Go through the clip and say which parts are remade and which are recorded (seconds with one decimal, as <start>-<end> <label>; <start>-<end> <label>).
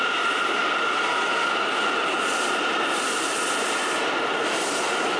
0.0-5.2 recorded